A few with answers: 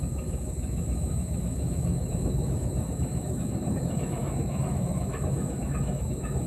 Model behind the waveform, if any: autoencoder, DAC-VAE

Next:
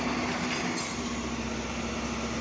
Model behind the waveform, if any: none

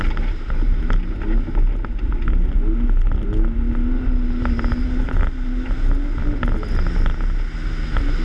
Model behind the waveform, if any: none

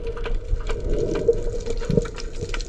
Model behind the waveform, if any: none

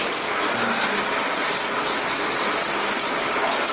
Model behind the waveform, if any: none